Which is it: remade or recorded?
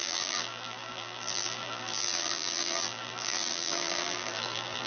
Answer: remade